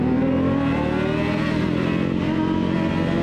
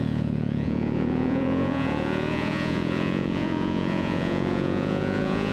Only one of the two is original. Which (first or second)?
first